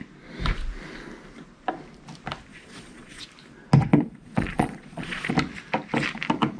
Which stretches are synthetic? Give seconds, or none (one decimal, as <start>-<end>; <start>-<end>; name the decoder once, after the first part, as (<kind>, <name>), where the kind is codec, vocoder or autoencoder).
2.5-3.2 (vocoder, Vocos); 3.9-5.3